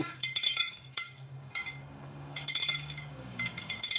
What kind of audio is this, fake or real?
fake